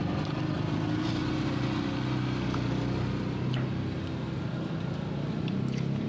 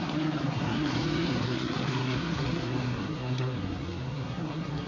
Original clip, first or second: first